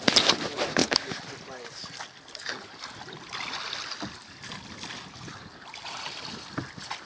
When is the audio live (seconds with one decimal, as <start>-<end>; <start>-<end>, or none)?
0.0-7.1